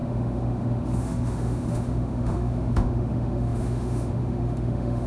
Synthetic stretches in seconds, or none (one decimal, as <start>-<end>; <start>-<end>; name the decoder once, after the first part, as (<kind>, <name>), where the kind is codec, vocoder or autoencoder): 0.0-5.1 (autoencoder, DAC-VAE)

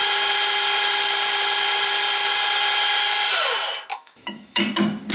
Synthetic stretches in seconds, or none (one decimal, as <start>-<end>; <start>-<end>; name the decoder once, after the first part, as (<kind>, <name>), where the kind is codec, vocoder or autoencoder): 3.9-4.6 (autoencoder, DAC-VAE)

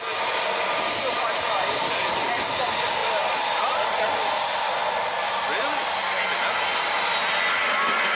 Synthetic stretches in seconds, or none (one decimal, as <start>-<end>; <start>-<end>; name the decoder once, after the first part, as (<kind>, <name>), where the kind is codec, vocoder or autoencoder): none